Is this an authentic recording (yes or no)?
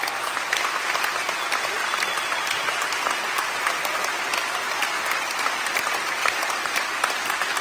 yes